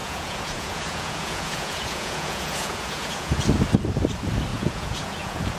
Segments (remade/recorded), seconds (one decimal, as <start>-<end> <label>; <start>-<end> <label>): 0.0-3.4 remade; 3.4-4.5 recorded; 4.5-5.6 remade